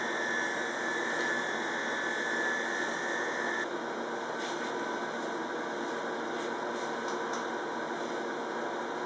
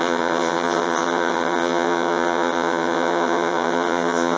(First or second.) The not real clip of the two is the second